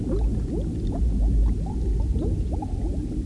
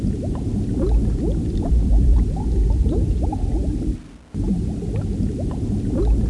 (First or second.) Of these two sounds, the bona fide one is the first